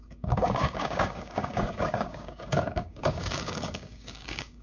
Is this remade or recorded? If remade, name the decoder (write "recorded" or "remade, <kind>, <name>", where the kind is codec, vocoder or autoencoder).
remade, codec, DAC